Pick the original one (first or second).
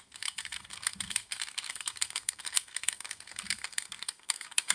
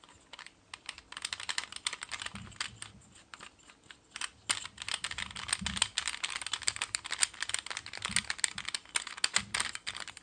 second